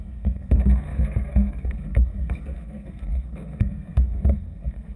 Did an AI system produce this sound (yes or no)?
yes